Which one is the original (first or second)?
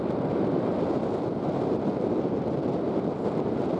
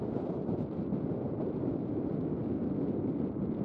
first